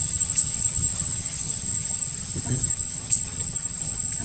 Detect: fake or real fake